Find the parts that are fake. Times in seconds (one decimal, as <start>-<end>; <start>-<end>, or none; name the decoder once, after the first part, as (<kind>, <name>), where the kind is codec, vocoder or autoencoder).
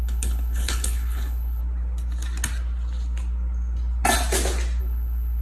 0.0-1.6 (codec, HILCodec); 4.8-5.4